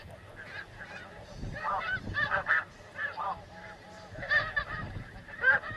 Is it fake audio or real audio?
fake